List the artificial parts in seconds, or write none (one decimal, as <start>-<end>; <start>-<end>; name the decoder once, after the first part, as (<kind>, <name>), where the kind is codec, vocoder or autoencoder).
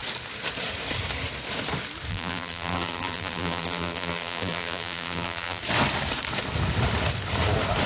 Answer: 2.1-5.6 (vocoder, BigVGAN v2)